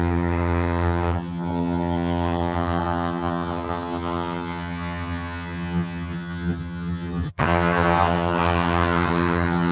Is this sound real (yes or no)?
no